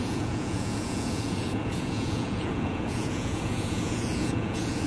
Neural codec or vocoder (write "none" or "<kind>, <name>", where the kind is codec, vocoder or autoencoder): vocoder, Vocos